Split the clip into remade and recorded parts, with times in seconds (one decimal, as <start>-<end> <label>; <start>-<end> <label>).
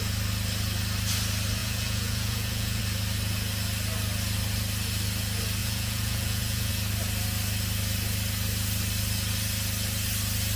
0.0-1.6 recorded; 1.6-2.8 remade; 2.8-5.6 recorded; 5.6-6.7 remade; 6.7-10.6 recorded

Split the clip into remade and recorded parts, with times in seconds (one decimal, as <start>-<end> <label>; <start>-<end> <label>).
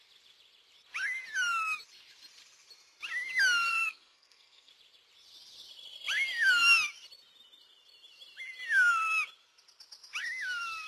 0.0-3.7 recorded; 3.7-4.7 remade; 4.7-10.9 recorded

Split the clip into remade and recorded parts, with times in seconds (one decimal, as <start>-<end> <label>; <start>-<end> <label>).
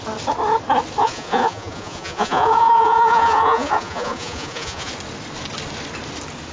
0.0-1.0 recorded; 1.0-4.9 remade; 4.9-6.5 recorded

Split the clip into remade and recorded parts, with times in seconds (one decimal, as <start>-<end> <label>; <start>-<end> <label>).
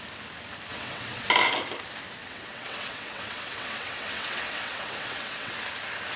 0.0-0.7 recorded; 0.7-1.3 remade; 1.3-2.2 recorded; 2.2-5.5 remade; 5.5-6.2 recorded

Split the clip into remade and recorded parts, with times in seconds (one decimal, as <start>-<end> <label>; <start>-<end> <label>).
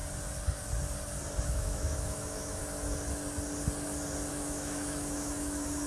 0.0-1.5 recorded; 1.5-2.6 remade; 2.6-4.3 recorded; 4.3-5.9 remade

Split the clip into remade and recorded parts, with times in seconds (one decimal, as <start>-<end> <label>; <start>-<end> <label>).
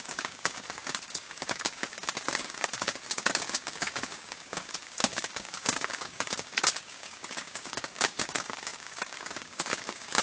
0.0-10.2 remade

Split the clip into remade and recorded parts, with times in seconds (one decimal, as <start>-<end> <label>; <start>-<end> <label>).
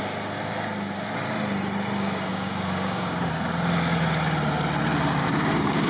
0.0-2.3 recorded; 2.3-3.3 remade; 3.3-5.2 recorded; 5.2-5.9 remade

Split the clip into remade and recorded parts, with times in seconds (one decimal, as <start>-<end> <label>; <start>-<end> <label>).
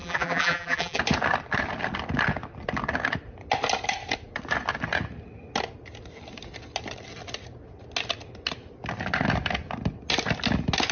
0.0-1.0 remade; 1.0-10.9 recorded